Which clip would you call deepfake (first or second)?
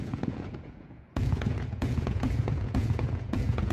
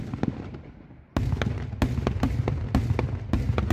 first